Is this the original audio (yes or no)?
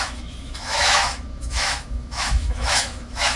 no